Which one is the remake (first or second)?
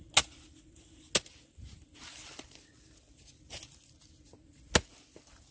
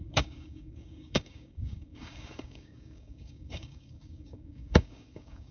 second